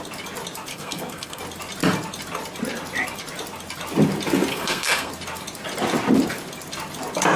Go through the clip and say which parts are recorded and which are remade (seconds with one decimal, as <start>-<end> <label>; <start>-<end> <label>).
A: 0.0-0.7 recorded; 0.7-1.4 remade; 1.4-4.5 recorded; 4.5-5.1 remade; 5.1-7.4 recorded